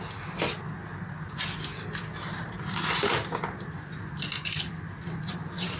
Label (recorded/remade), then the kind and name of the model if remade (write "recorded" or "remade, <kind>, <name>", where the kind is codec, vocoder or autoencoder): recorded